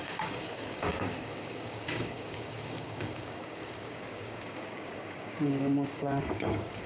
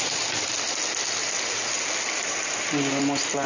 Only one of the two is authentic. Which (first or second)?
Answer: second